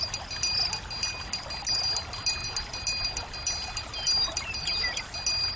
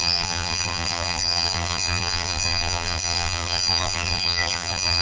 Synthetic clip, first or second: second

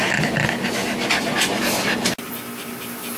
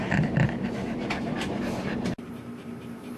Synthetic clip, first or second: second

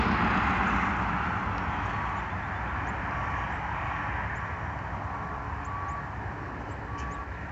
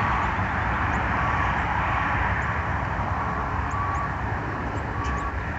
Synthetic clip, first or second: second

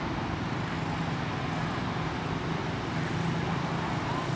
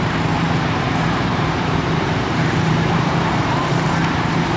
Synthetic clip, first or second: second